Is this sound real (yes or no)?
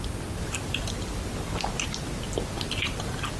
yes